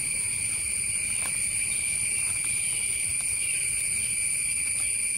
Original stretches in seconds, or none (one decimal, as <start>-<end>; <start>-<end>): 3.1-5.2

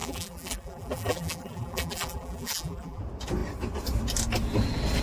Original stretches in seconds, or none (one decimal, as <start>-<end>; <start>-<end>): 3.0-5.0